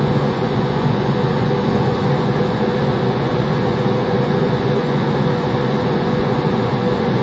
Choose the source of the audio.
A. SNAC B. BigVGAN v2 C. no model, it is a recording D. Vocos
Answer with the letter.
D